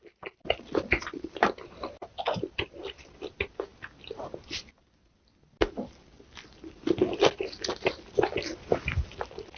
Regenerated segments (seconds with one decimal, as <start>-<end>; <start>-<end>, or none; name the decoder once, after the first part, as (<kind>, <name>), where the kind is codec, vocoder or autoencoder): none